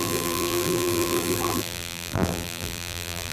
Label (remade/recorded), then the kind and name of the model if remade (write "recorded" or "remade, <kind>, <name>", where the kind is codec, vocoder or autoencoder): remade, vocoder, BigVGAN v2